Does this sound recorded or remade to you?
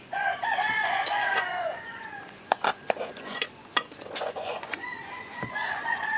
remade